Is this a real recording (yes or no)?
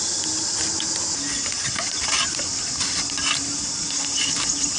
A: yes